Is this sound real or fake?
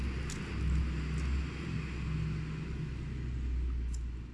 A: real